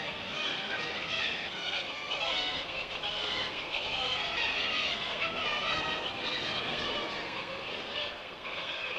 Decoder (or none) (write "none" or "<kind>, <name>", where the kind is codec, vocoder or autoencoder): codec, SNAC